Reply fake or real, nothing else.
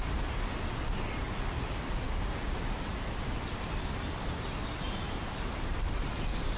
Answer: real